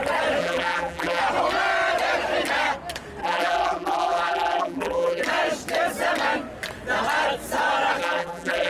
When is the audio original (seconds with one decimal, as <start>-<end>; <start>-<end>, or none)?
0.0-0.4; 1.2-3.2; 5.2-8.0